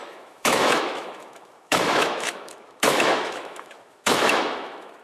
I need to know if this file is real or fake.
fake